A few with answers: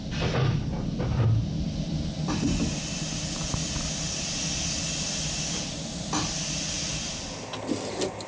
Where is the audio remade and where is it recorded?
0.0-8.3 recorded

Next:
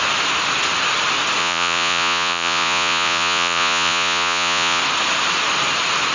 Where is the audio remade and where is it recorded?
0.0-1.4 recorded; 1.4-4.8 remade; 4.8-6.1 recorded

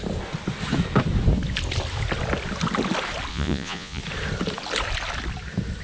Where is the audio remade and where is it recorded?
0.0-3.3 recorded; 3.3-4.0 remade; 4.0-5.8 recorded

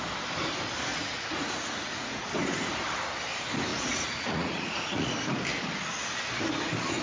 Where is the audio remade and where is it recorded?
0.0-0.9 recorded; 0.9-2.3 remade; 2.3-3.7 recorded; 3.7-5.1 remade; 5.1-7.0 recorded

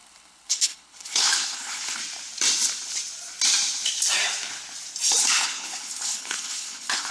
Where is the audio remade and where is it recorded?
0.0-2.0 remade; 2.0-5.1 recorded; 5.1-7.1 remade

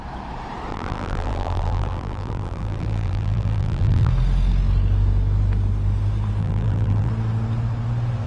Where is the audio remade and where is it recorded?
0.0-0.7 recorded; 0.7-4.1 remade; 4.1-6.4 recorded; 6.4-7.1 remade; 7.1-8.3 recorded

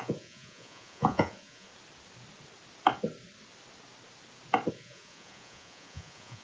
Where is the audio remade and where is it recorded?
0.0-1.7 remade; 1.7-4.7 recorded; 4.7-6.4 remade